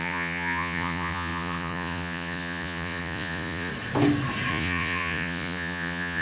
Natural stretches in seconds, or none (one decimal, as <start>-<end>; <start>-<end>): 3.7-4.5